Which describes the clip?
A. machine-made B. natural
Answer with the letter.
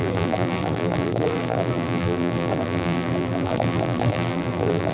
A